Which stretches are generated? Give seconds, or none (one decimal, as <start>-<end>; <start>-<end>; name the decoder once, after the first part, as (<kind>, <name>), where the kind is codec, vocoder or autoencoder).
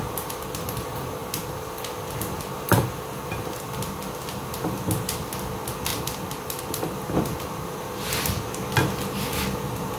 1.2-4.8 (vocoder, BigVGAN v2); 5.9-6.6